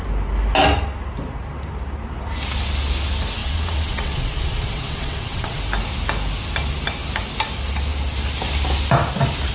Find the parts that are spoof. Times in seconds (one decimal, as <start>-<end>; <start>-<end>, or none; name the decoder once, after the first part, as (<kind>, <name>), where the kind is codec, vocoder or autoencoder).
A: 3.4-5.6 (vocoder, WaveNeXt)